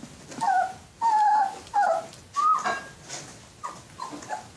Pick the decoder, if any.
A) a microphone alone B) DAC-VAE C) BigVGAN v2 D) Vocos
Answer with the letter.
A